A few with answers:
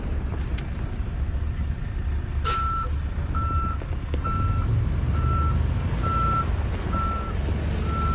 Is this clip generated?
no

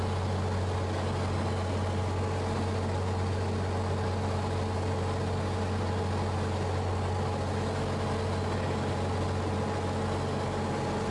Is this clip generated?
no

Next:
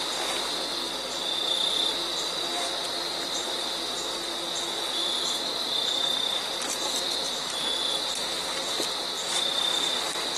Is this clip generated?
no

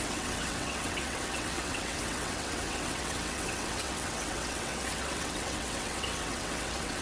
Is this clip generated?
yes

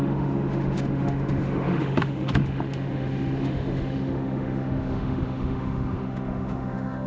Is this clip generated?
yes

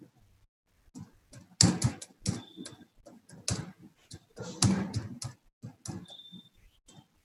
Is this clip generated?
no